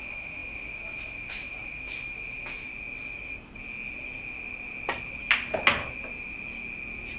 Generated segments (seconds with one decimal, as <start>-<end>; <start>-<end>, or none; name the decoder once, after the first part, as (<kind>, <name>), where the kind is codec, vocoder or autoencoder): 0.0-2.7 (autoencoder, DAC-VAE)